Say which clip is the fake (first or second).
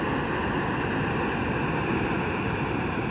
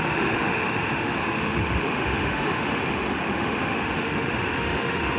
second